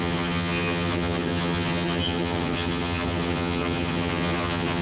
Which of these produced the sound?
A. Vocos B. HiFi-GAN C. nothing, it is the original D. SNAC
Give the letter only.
B